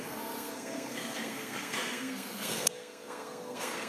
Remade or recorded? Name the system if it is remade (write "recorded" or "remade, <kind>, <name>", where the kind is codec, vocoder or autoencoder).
remade, codec, SNAC